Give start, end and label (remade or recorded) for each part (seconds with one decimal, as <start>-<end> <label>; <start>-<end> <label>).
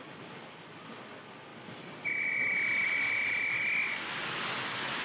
0.0-1.5 recorded; 1.5-2.3 remade; 2.3-3.2 recorded; 3.2-3.7 remade; 3.7-5.0 recorded